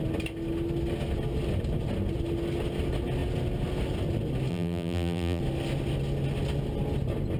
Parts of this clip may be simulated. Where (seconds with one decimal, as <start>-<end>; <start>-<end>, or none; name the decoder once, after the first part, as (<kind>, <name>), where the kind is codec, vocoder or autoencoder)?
4.5-5.4 (vocoder, BigVGAN v2)